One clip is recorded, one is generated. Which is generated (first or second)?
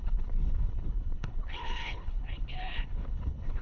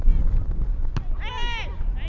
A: first